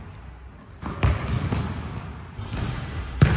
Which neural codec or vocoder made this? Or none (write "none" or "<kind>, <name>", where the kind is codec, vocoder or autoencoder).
none